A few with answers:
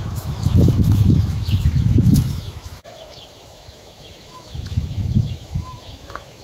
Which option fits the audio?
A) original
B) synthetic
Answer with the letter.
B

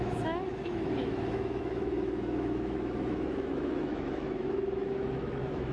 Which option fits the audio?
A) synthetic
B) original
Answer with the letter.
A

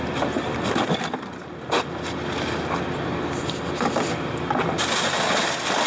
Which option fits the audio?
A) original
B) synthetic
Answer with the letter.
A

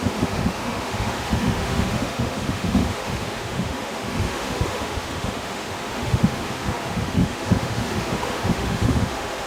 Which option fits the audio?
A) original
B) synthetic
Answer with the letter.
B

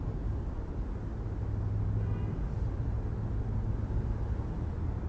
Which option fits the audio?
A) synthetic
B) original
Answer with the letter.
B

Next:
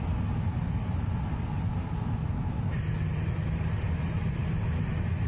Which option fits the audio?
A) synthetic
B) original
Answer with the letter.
B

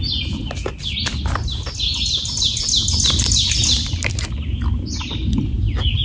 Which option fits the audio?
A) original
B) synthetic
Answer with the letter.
A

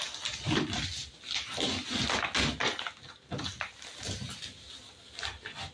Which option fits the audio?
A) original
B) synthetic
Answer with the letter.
A